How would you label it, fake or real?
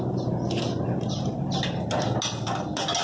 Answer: real